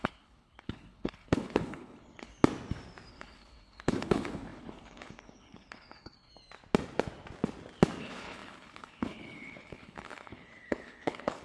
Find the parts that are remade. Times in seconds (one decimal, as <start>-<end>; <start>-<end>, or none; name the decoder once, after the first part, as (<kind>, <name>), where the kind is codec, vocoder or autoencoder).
0.0-2.3 (codec, HILCodec); 3.1-6.3; 8.0-11.4